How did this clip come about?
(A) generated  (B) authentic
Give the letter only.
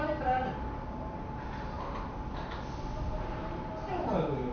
B